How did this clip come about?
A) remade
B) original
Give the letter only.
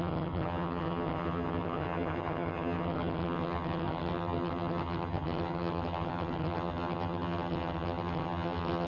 A